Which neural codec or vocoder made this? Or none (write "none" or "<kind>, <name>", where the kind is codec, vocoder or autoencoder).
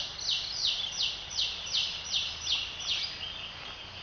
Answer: none